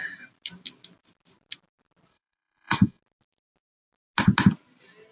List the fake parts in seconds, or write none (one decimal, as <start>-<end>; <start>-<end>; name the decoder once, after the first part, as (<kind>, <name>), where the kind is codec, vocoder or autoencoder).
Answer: 2.1-3.0 (codec, SNAC)